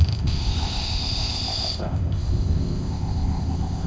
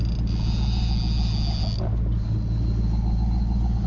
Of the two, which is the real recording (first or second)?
second